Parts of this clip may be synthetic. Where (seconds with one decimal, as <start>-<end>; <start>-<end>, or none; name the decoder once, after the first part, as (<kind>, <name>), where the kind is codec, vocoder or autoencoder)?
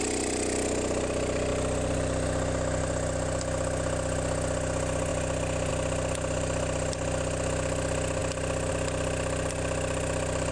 none